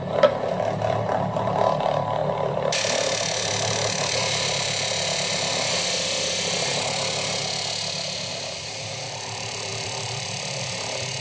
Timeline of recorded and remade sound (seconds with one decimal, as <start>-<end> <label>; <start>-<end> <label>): 0.0-7.4 remade; 7.4-8.3 recorded; 8.3-11.2 remade